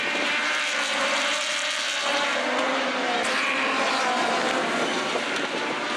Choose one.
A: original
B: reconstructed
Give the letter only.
B